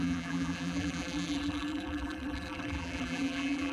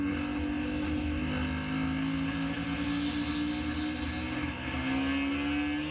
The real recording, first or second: second